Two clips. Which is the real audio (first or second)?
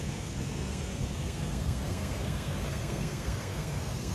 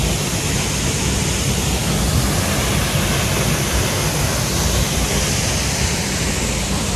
second